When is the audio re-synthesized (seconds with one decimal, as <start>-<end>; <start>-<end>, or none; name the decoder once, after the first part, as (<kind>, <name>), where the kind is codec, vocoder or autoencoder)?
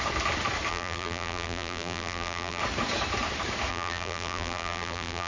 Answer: 0.7-2.6 (vocoder, BigVGAN v2); 3.7-5.3